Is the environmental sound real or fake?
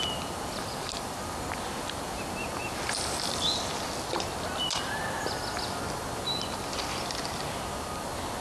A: real